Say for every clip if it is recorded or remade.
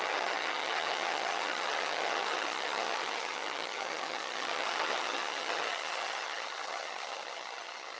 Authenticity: remade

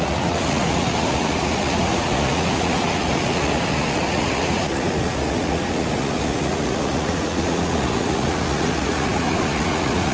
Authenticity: remade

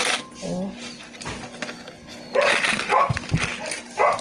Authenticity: recorded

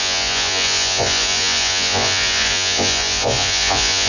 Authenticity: remade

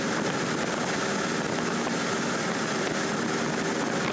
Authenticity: recorded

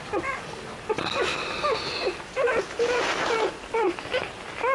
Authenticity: recorded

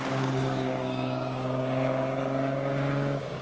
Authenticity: remade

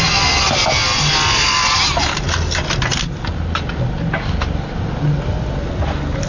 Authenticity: recorded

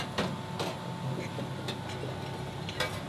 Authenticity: recorded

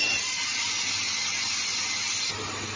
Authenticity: recorded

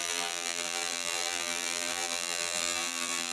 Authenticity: remade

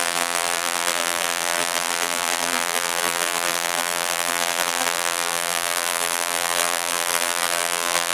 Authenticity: remade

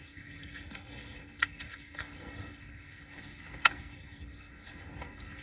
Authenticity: remade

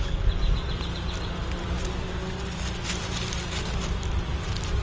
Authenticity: recorded